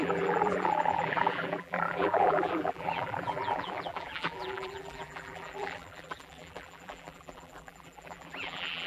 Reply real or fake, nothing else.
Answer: fake